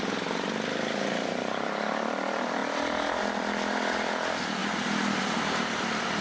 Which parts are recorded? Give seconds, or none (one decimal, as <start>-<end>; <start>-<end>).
4.6-5.2